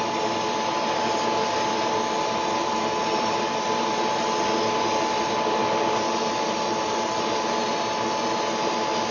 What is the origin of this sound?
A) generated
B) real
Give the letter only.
B